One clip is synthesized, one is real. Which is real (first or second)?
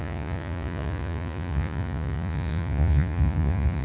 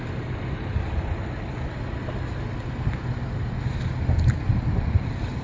second